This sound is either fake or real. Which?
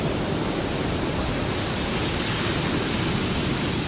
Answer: real